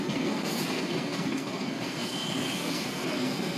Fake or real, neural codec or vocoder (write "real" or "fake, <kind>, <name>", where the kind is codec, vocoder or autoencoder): fake, codec, SNAC